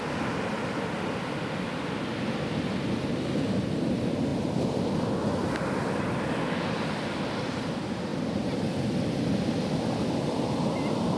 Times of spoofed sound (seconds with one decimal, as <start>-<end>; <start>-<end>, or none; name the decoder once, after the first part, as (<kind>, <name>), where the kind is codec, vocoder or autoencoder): none